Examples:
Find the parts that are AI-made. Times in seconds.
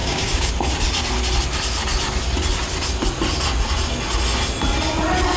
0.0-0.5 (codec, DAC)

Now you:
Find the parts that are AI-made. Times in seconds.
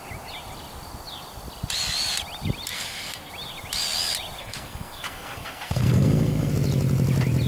2.7-3.3 (codec, SNAC); 4.4-6.5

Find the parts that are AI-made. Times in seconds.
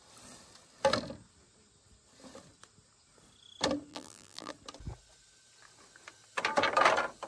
3.9-4.5 (vocoder, BigVGAN v2)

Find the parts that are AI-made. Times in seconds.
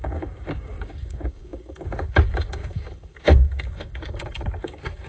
0.0-5.1 (codec, DAC)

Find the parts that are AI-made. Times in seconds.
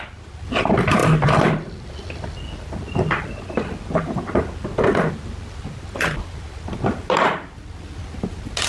none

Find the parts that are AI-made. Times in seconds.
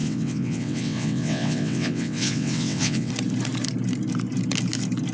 0.0-3.1 (vocoder, WaveNeXt)